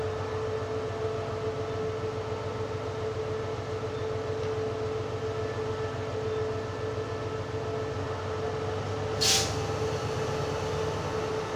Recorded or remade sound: recorded